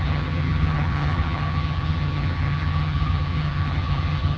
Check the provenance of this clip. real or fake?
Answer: fake